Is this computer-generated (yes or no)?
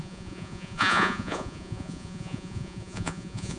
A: yes